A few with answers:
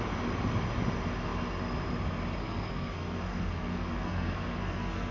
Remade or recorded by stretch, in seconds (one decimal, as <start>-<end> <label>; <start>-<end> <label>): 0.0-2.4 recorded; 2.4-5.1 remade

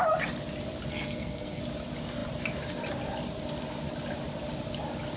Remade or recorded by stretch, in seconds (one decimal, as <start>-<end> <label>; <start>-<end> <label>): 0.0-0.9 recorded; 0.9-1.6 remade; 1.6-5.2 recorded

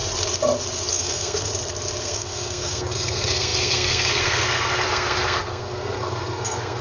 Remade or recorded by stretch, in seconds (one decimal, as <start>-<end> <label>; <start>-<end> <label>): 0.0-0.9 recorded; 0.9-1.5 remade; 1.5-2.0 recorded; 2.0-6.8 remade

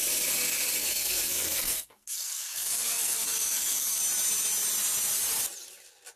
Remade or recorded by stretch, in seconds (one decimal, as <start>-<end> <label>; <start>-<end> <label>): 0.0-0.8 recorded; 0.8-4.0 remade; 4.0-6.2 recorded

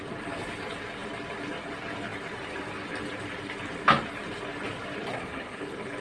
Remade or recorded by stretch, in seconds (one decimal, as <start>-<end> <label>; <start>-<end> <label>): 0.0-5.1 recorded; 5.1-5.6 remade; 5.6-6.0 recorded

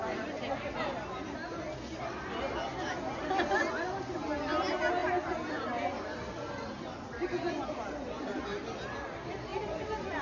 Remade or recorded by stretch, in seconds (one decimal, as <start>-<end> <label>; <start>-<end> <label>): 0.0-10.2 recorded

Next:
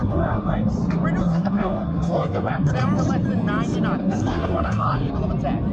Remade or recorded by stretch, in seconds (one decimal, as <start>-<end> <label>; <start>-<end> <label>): 0.0-0.7 remade; 0.7-1.2 recorded; 1.2-2.7 remade; 2.7-4.0 recorded; 4.0-5.1 remade; 5.1-5.7 recorded